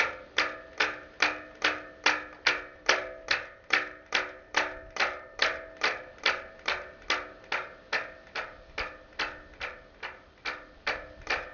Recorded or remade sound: recorded